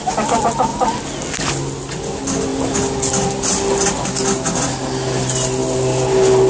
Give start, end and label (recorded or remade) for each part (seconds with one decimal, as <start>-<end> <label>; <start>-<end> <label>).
0.0-6.5 recorded